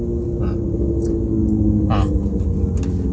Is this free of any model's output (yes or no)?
yes